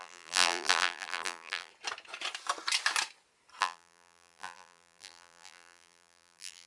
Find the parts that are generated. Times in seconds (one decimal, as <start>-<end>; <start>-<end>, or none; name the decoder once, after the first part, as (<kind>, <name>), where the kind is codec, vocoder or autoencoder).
0.0-1.7 (vocoder, BigVGAN v2); 3.6-6.7